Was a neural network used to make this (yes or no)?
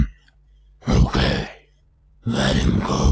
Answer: no